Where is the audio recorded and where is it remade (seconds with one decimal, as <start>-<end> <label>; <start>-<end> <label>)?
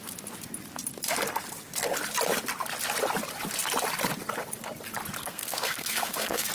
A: 0.0-5.2 recorded; 5.2-6.5 remade